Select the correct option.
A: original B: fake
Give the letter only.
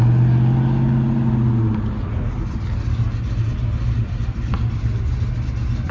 A